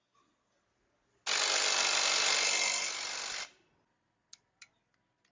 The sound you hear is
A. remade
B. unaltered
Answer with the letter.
B